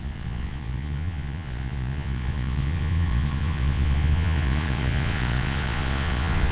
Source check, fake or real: fake